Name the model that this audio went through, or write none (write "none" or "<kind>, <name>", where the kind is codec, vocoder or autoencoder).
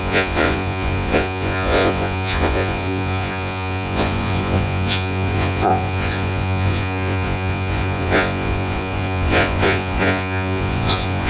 vocoder, Vocos